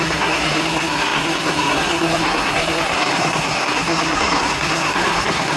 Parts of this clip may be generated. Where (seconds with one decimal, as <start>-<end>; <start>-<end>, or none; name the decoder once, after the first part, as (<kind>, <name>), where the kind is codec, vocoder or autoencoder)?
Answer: 0.0-5.6 (codec, SNAC)